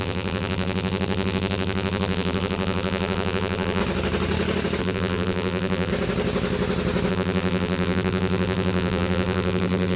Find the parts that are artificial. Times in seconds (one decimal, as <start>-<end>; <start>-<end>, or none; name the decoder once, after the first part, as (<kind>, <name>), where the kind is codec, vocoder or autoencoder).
0.0-3.8 (vocoder, BigVGAN v2); 4.8-5.9; 7.1-10.0